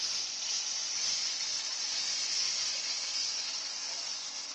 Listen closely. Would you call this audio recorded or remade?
remade